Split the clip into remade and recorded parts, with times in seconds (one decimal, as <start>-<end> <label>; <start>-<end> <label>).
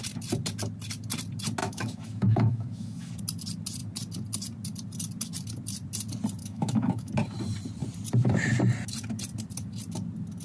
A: 0.0-1.6 recorded; 1.6-3.1 remade; 3.1-6.4 recorded; 6.4-7.1 remade; 7.1-10.4 recorded